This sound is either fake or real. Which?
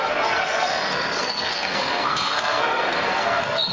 fake